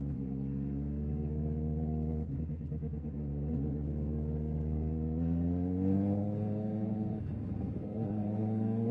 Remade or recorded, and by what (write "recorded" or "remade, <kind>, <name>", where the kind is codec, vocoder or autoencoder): remade, codec, SNAC